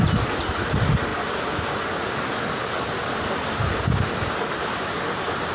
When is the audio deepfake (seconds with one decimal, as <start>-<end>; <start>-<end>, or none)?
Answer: none